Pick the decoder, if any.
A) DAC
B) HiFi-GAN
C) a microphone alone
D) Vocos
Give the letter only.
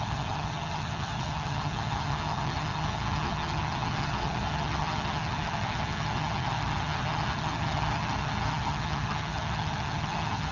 B